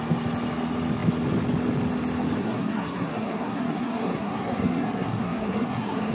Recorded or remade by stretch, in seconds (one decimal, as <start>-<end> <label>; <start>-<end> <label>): 0.0-2.4 recorded; 2.4-6.1 remade